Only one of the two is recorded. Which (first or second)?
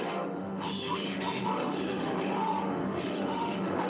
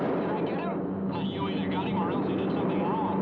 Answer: second